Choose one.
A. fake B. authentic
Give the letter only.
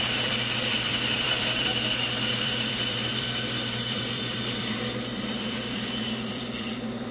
A